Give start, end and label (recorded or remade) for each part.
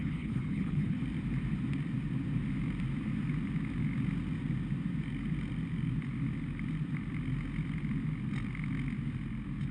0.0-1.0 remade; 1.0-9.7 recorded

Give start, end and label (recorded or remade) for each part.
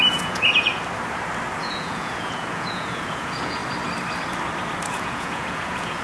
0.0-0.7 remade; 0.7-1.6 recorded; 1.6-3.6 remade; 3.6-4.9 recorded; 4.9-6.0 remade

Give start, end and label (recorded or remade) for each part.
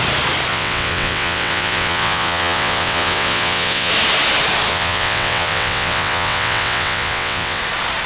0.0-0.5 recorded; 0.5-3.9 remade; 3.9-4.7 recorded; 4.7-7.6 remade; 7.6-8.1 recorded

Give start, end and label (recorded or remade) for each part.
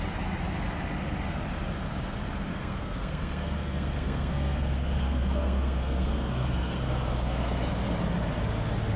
0.0-2.5 recorded; 2.5-7.7 remade; 7.7-9.0 recorded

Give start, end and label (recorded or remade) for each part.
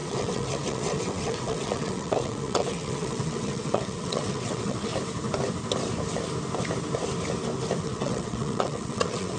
0.0-4.9 remade; 4.9-7.8 recorded; 7.8-9.4 remade